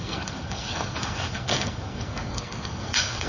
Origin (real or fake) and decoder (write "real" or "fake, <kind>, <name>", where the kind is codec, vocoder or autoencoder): fake, codec, SNAC